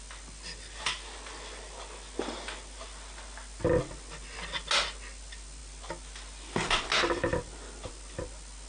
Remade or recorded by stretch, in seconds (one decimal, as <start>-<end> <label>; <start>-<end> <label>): 0.0-8.7 recorded